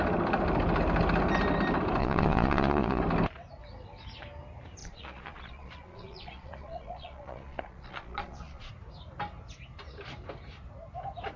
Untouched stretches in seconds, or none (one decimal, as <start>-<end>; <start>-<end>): 0.0-2.0; 3.0-4.8; 8.7-11.4